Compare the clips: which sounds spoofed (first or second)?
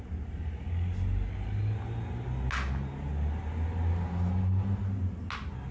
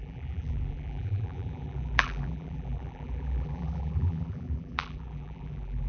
second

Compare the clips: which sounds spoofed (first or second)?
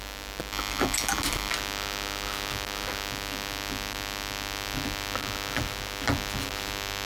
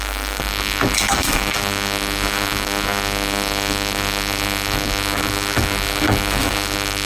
second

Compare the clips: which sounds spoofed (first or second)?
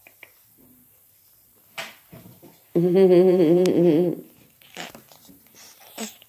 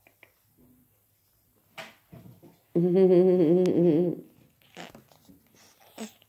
first